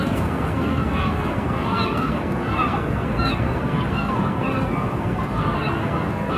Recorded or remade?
remade